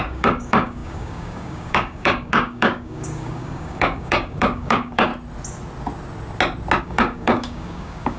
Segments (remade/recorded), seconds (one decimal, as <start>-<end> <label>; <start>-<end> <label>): 0.0-5.1 remade; 5.1-6.8 recorded; 6.8-8.2 remade